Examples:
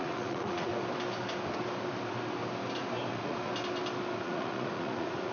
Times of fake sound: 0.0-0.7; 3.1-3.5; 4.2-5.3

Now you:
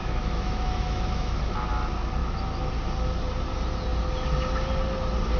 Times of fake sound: 0.0-1.4; 2.2-2.7